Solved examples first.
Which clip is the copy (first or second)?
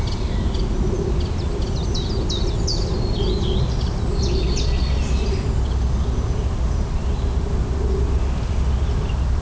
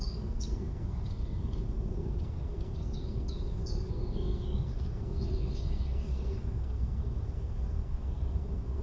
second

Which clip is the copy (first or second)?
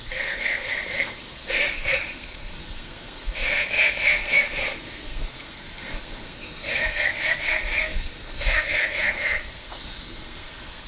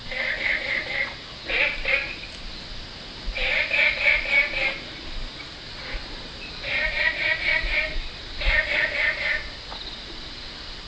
first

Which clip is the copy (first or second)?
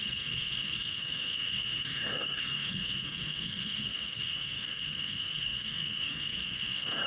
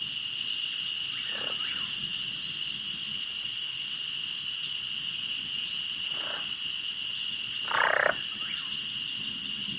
first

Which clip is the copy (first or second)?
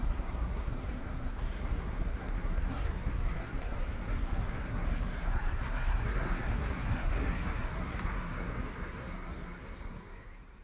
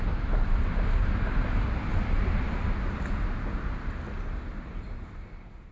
first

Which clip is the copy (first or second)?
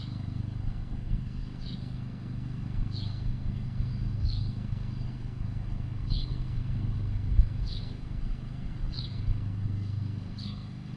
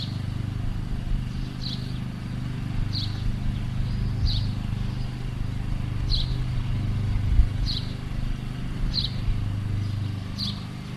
first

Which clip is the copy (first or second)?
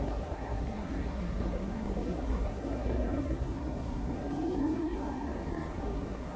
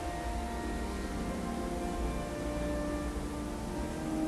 first